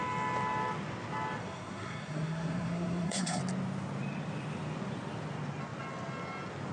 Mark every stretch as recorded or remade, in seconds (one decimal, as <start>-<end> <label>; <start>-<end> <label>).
0.0-1.4 recorded; 1.4-3.4 remade; 3.4-6.7 recorded